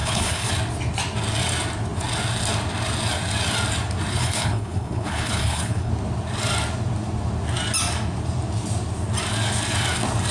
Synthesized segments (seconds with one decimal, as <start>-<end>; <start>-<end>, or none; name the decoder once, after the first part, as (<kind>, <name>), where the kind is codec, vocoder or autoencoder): 0.0-0.5 (codec, HILCodec); 4.1-5.9